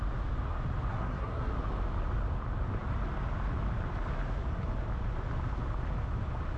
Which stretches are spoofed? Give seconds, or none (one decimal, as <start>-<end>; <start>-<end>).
0.9-1.5